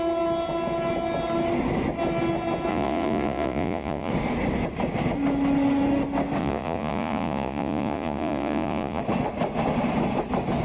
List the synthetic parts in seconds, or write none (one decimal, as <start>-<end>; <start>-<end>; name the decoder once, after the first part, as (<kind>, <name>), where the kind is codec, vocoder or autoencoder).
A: 2.7-4.1 (vocoder, Vocos); 6.4-9.0

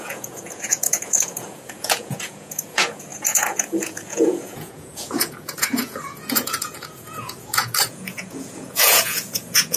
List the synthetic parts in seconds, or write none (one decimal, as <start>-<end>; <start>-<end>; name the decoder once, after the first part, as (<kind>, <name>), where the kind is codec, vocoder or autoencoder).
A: 0.0-9.8 (vocoder, Vocos)